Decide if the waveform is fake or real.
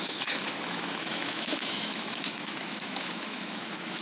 fake